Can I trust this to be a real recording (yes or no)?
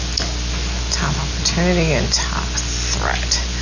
yes